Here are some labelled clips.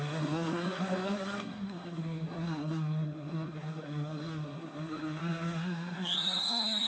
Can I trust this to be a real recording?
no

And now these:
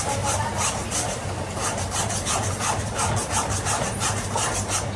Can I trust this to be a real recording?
no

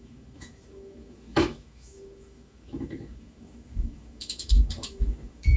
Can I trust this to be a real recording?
no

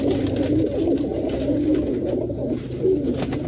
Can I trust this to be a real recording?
yes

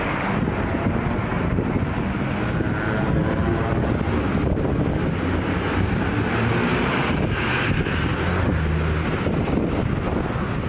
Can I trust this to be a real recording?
yes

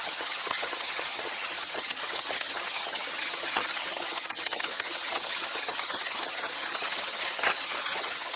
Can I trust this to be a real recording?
no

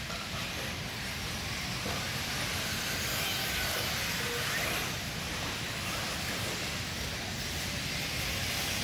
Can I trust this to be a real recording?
yes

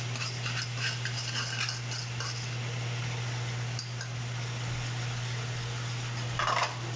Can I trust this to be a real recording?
yes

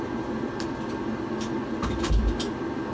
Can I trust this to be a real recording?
yes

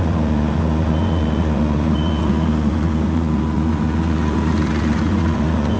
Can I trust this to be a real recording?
no